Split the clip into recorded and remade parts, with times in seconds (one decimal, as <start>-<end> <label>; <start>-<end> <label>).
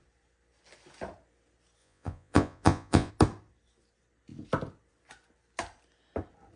0.0-1.8 recorded; 1.8-3.1 remade; 3.1-6.6 recorded